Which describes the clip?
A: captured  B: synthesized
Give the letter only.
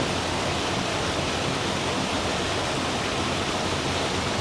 A